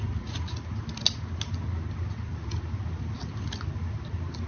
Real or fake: real